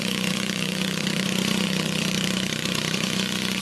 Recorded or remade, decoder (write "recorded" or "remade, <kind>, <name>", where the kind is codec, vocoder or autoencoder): remade, vocoder, Vocos